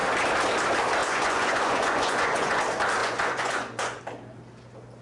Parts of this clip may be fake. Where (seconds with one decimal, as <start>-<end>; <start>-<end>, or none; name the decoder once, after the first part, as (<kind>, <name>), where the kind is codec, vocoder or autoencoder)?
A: 1.0-2.6 (vocoder, Vocos); 3.0-4.0